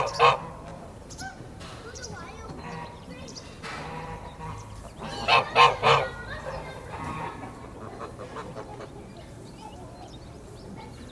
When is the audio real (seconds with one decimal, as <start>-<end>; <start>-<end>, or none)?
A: 0.0-0.7; 4.4-5.8; 7.3-8.7; 10.2-11.1